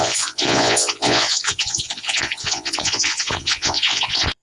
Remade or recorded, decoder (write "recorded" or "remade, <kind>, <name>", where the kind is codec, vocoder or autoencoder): remade, vocoder, Vocos